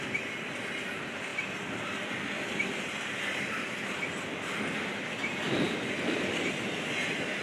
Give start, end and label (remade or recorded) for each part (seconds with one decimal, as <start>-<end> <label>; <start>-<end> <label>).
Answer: 0.0-7.4 recorded